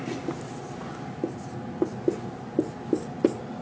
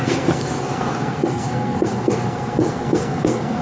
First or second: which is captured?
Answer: first